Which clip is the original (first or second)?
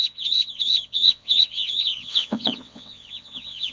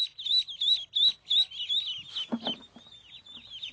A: second